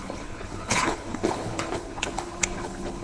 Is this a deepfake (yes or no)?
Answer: yes